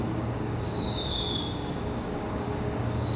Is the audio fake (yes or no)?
yes